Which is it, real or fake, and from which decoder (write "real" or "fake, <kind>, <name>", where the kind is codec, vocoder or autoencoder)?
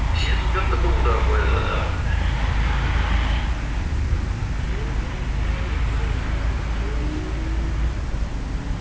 real